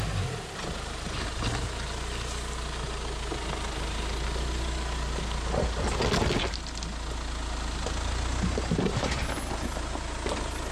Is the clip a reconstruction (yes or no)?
no